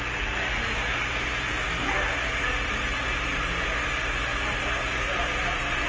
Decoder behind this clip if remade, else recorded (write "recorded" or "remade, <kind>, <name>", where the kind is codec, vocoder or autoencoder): recorded